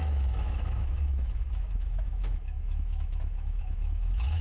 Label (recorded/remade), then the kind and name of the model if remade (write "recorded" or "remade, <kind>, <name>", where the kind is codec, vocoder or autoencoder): remade, autoencoder, DAC-VAE